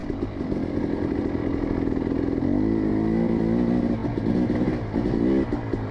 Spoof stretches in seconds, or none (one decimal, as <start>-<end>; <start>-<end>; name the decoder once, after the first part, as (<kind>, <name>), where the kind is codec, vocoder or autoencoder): none